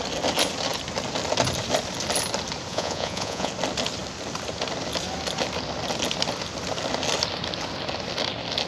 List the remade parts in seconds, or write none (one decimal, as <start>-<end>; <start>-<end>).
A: 2.7-3.5